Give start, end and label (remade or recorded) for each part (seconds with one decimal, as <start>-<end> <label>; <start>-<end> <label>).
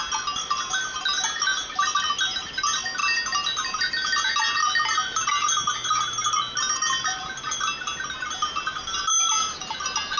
0.0-10.2 recorded